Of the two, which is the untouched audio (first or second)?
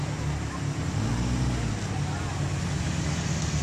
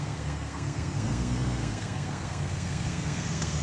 first